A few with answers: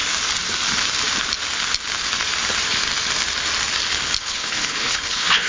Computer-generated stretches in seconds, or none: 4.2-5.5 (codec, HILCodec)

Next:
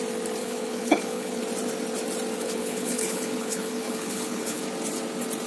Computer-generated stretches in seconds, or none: 0.4-1.4 (codec, HILCodec); 2.4-4.6

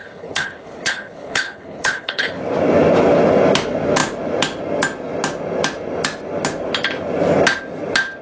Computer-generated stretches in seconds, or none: 0.0-2.4 (codec, HILCodec)

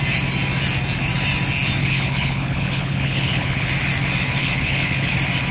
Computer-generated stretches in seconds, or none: 1.8-3.7 (codec, HILCodec); 4.4-5.1

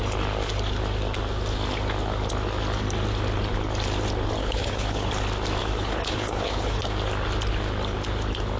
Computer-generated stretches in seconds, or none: 4.4-5.1 (codec, HILCodec); 5.6-6.8

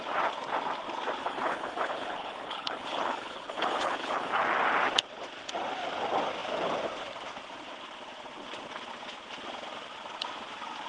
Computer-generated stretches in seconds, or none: 1.2-4.4 (codec, HILCodec)

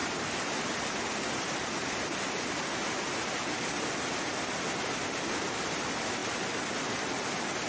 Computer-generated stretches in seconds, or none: none

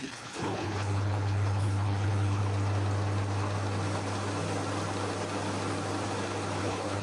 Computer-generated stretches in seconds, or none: 0.0-2.4 (codec, HILCodec); 6.6-7.0